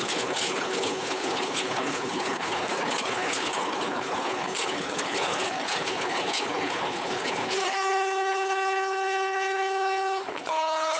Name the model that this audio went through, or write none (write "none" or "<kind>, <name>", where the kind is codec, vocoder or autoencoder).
codec, HILCodec